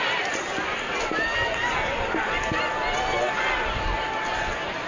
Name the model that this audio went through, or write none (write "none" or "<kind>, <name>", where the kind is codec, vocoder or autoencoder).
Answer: none